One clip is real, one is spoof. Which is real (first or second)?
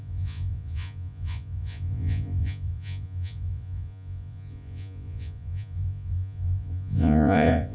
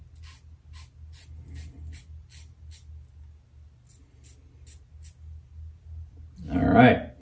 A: second